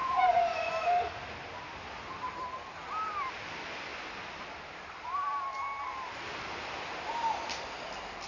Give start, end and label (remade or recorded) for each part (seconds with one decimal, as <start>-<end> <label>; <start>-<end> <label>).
0.0-0.7 remade; 0.7-8.3 recorded

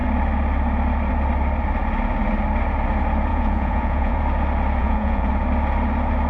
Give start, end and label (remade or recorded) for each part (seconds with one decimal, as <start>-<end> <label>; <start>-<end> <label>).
0.0-3.3 recorded; 3.3-4.2 remade; 4.2-4.8 recorded; 4.8-5.3 remade; 5.3-6.3 recorded

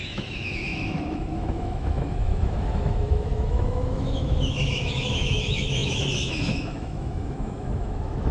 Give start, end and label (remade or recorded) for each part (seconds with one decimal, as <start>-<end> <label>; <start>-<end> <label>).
0.0-8.3 remade

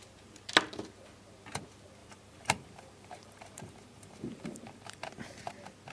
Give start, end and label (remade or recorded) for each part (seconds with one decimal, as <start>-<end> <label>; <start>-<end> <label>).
0.0-2.0 recorded; 2.0-5.5 remade; 5.5-5.9 recorded

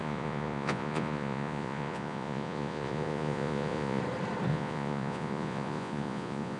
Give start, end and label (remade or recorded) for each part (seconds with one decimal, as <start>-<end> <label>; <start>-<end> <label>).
0.0-4.0 remade; 4.0-4.5 recorded; 4.5-6.6 remade

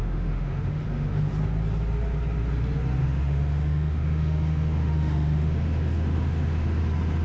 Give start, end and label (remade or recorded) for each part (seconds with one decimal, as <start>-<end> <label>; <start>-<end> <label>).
0.0-1.3 remade; 1.3-3.0 recorded; 3.0-6.8 remade; 6.8-7.2 recorded

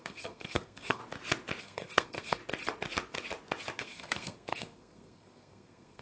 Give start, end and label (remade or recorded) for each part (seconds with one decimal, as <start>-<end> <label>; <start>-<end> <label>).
0.0-1.0 remade; 1.0-1.6 recorded; 1.6-2.4 remade; 2.4-3.8 recorded; 3.8-6.0 remade